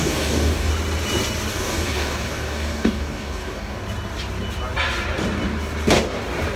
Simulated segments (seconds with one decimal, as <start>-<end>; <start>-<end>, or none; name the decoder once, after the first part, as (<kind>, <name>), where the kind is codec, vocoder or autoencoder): 0.0-0.7 (codec, DAC); 1.5-3.8